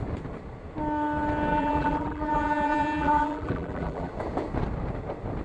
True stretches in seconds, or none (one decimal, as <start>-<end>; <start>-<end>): 0.0-1.5; 4.1-5.4